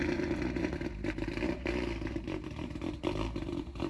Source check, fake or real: fake